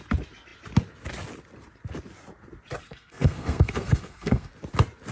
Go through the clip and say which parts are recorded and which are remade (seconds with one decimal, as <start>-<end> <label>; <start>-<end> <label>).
0.0-2.8 recorded; 2.8-4.5 remade; 4.5-5.1 recorded